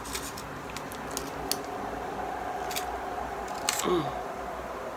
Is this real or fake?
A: real